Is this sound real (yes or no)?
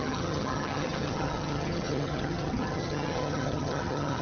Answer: no